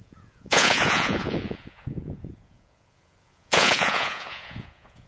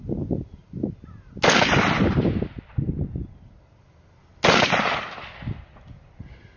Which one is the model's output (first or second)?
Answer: first